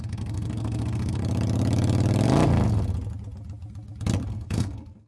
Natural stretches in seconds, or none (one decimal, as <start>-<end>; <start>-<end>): 1.2-4.3